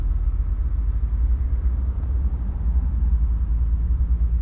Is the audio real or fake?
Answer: real